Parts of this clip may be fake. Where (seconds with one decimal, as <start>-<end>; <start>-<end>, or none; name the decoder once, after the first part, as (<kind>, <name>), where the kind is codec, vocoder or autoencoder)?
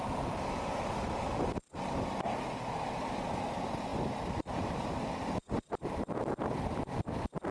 none